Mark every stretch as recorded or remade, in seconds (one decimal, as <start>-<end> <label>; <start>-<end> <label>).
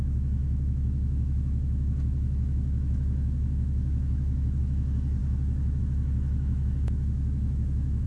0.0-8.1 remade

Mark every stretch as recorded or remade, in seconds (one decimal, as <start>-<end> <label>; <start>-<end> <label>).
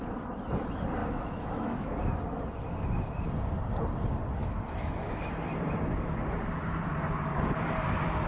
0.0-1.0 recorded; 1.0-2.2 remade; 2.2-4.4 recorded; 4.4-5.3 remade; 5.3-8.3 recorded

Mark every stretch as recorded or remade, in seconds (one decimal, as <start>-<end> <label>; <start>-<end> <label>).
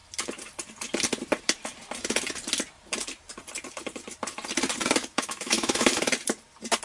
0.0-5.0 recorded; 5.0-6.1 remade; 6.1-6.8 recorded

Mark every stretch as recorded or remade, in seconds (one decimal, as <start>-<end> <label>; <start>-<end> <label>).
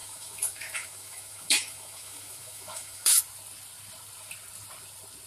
0.0-3.2 remade; 3.2-5.3 recorded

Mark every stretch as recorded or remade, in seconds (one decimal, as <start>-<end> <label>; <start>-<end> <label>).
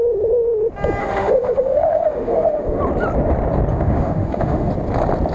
0.0-1.0 recorded; 1.0-2.8 remade; 2.8-3.7 recorded; 3.7-4.7 remade; 4.7-5.3 recorded